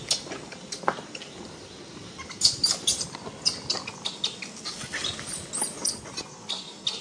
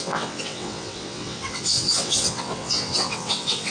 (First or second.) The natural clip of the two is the first